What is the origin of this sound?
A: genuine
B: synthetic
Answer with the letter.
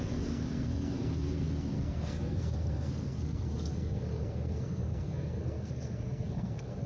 B